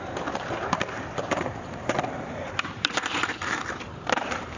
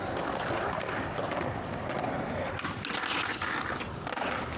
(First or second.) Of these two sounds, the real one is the second